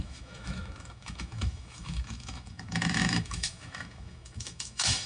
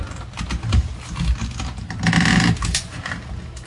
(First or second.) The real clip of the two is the second